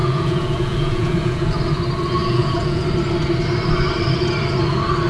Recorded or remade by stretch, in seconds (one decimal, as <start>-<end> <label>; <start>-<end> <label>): 0.0-1.5 remade; 1.5-2.2 recorded; 2.2-2.8 remade; 2.8-5.1 recorded